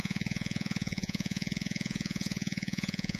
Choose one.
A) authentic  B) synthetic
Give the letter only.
B